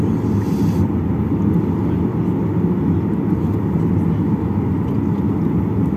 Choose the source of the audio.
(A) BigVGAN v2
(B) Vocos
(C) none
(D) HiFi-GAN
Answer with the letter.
C